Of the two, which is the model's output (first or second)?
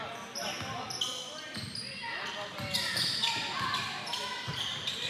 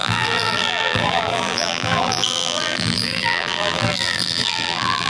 second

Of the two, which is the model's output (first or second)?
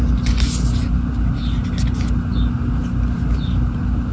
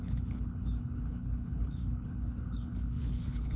second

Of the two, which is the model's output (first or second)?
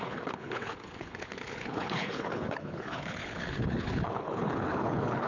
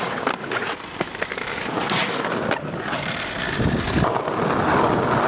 first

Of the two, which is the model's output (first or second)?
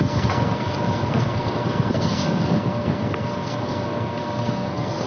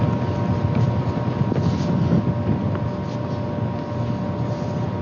first